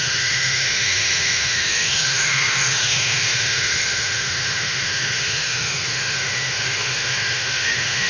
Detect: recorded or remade remade